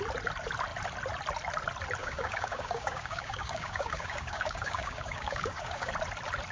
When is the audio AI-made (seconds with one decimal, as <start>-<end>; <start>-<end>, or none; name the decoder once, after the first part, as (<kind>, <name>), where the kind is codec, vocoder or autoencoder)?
2.0-5.9 (codec, DAC)